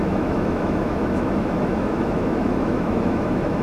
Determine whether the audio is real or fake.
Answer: fake